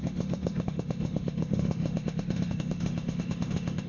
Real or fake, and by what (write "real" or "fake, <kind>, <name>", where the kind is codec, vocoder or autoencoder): fake, autoencoder, DAC-VAE